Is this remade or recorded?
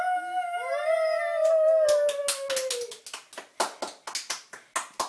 recorded